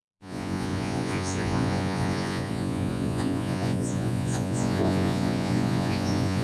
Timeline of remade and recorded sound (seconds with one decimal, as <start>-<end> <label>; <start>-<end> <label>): 0.0-6.4 remade